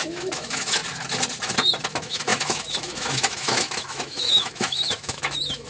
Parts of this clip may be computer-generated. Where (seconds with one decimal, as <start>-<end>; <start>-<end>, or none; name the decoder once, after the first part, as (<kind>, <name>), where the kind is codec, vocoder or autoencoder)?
0.0-0.8 (autoencoder, DAC-VAE); 1.9-5.7